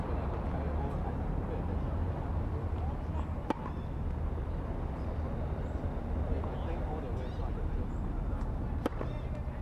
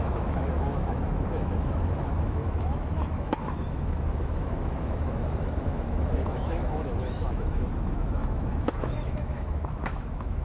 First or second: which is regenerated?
second